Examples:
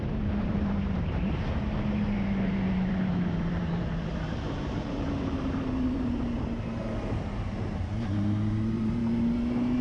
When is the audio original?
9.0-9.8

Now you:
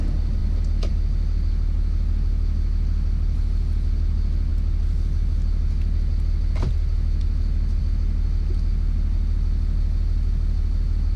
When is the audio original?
0.0-11.2

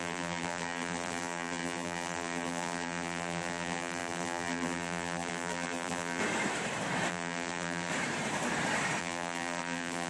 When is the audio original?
6.2-7.1; 7.9-9.0

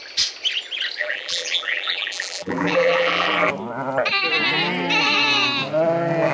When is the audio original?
0.0-1.0; 3.5-6.3

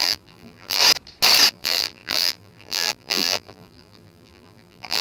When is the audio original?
0.8-1.5

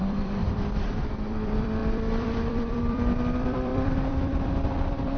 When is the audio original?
none